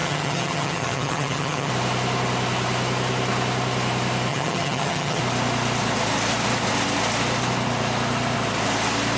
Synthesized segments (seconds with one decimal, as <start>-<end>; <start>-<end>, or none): 0.0-1.7; 4.3-5.2